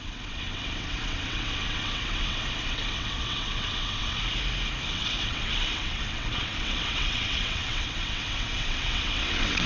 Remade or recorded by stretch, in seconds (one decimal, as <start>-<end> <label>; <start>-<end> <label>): 0.0-4.2 remade; 4.2-4.9 recorded; 4.9-9.7 remade